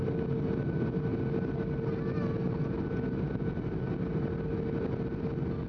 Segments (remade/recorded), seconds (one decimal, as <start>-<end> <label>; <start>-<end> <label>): 0.0-5.7 recorded